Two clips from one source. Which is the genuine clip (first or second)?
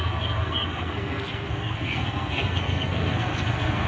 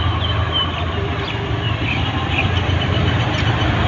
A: second